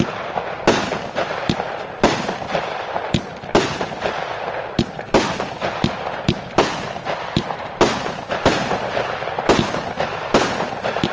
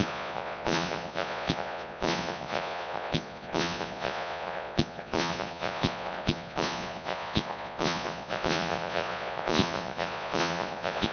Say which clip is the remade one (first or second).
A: second